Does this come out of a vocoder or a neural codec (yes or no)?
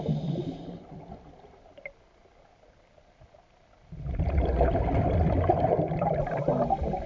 no